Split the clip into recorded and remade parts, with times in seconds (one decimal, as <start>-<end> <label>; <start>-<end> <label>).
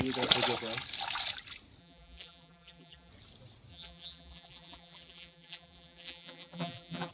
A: 0.0-1.8 recorded; 1.8-3.1 remade; 3.1-3.7 recorded; 3.7-7.1 remade